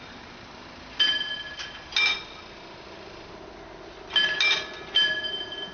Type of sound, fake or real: real